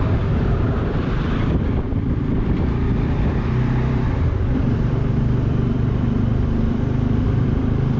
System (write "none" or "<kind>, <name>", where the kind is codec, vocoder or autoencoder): vocoder, BigVGAN v2